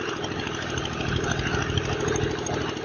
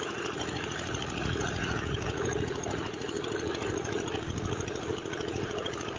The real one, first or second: first